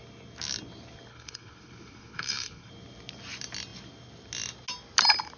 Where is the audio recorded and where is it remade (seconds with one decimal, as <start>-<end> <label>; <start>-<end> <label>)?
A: 0.0-1.1 recorded; 1.1-2.7 remade; 2.7-5.4 recorded